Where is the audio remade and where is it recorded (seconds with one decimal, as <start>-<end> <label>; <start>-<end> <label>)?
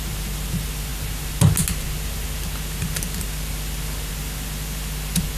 0.0-5.4 recorded